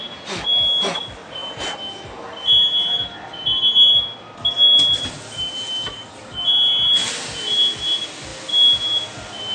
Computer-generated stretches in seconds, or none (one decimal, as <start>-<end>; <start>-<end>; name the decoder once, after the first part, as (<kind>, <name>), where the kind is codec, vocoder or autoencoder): none